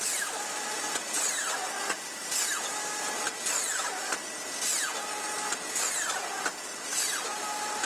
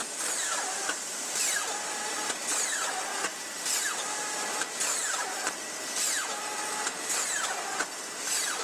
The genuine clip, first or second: first